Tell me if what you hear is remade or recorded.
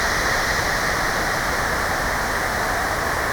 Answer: recorded